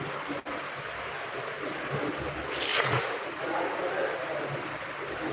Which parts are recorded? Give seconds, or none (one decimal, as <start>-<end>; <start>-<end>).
0.0-2.7; 3.8-5.3